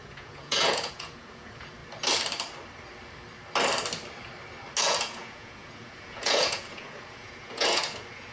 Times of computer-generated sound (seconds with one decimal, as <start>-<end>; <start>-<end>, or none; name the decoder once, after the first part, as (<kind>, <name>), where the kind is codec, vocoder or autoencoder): 0.0-1.8 (vocoder, Vocos); 4.8-8.3